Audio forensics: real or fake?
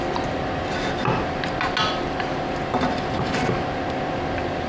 real